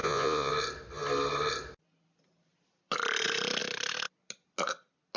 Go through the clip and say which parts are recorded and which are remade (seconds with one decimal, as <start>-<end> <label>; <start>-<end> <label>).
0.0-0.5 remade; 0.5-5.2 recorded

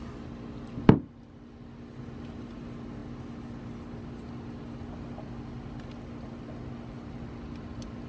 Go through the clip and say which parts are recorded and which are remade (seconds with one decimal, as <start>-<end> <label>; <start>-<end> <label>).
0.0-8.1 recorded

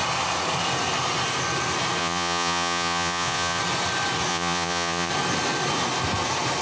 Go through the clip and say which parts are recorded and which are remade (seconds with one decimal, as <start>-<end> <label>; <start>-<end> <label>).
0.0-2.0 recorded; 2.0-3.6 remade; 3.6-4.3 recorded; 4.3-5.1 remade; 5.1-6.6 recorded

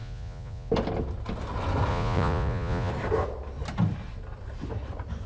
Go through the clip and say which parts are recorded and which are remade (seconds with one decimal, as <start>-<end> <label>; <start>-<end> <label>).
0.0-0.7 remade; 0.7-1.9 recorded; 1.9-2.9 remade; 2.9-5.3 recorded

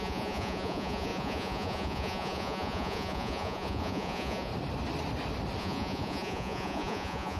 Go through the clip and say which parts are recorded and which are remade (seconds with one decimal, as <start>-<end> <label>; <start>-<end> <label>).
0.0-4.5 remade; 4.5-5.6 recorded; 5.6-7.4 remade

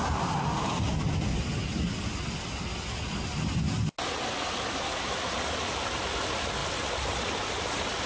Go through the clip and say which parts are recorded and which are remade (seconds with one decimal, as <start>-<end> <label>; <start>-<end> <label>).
0.0-8.1 recorded